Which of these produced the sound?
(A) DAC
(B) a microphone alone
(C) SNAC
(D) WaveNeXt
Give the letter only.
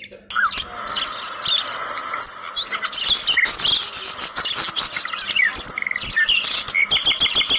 B